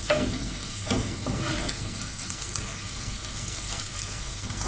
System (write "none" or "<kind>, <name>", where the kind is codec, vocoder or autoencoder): codec, SNAC